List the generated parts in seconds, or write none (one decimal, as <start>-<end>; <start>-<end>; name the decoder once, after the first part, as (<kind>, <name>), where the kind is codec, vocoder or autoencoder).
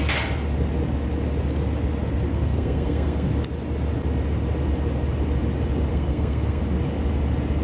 2.3-3.3 (codec, SNAC); 5.9-6.6